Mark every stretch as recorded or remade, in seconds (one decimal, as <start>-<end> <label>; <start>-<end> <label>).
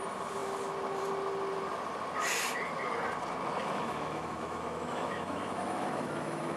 0.0-3.6 recorded; 3.6-6.6 remade